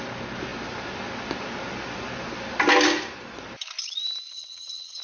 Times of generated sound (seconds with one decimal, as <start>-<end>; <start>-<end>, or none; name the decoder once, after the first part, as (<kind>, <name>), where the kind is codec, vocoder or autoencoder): 4.3-5.0 (vocoder, HiFi-GAN)